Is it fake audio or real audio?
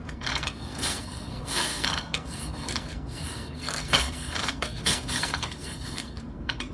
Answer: fake